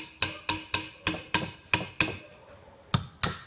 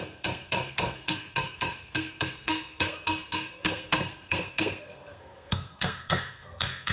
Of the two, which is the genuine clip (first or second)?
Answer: first